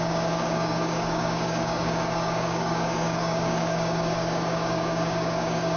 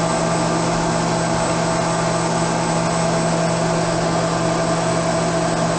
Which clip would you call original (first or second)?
second